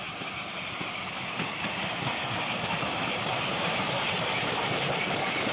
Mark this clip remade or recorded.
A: recorded